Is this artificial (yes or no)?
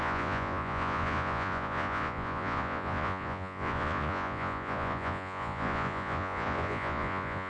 yes